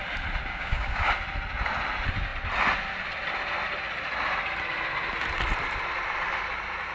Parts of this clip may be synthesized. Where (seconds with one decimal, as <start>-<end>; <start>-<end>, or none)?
0.5-1.1